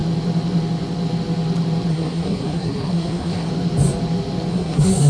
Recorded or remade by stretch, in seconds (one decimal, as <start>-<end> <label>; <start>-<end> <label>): 0.0-1.9 recorded; 1.9-3.5 remade; 3.5-4.5 recorded; 4.5-5.1 remade